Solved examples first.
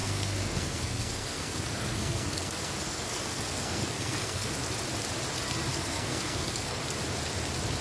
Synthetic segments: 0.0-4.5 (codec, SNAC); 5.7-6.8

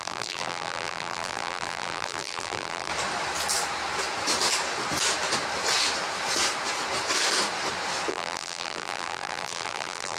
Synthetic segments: 0.0-2.9 (vocoder, BigVGAN v2); 8.1-10.2

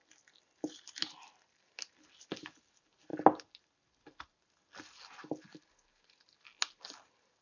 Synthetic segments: none

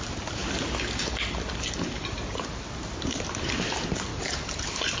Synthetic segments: 0.0-0.4 (vocoder, BigVGAN v2); 3.0-4.1

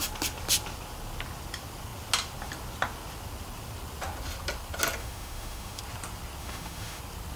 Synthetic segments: 5.0-5.8 (autoencoder, DAC-VAE); 6.4-7.0